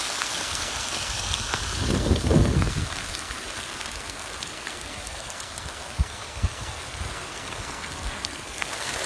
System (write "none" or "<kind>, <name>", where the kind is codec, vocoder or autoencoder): codec, SNAC